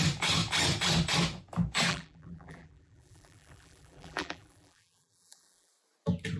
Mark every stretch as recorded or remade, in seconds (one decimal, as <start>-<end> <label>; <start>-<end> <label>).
0.0-1.9 recorded; 1.9-5.7 remade; 5.7-6.4 recorded